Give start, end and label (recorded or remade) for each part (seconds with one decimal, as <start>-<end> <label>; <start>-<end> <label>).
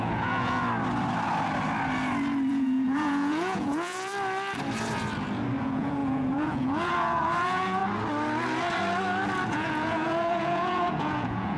0.0-0.6 remade; 0.6-2.5 recorded; 2.5-4.1 remade; 4.1-5.6 recorded; 5.6-7.8 remade; 7.8-9.5 recorded; 9.5-11.6 remade